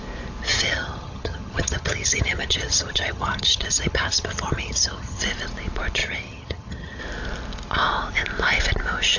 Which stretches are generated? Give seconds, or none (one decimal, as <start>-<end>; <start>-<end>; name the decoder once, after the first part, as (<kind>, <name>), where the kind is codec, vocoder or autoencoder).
0.5-5.2 (vocoder, HiFi-GAN); 6.0-7.0